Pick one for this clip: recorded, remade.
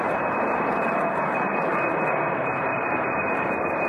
remade